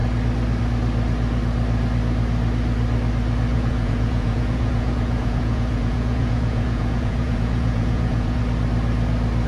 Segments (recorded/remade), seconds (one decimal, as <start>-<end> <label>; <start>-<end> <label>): 0.0-3.5 recorded; 3.5-8.4 remade; 8.4-9.5 recorded